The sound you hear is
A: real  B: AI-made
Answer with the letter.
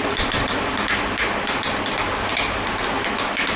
A